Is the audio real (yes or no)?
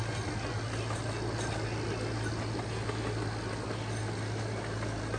yes